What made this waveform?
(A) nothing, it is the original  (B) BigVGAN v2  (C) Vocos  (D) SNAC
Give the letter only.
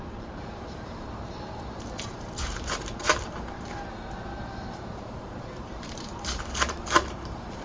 B